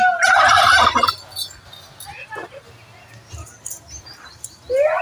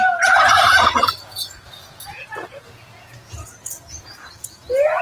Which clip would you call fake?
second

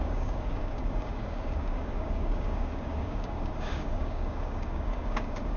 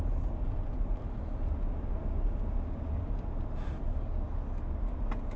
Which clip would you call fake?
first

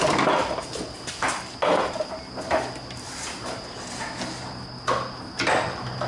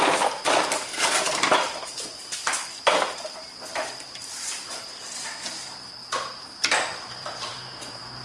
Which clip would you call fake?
second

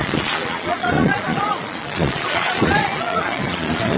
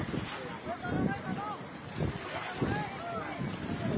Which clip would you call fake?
first